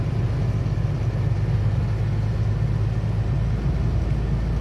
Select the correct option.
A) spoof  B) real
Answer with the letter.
B